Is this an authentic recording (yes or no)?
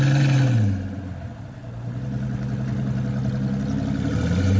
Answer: yes